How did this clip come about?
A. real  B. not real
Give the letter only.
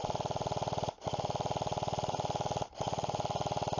A